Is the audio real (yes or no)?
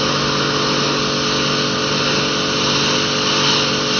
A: yes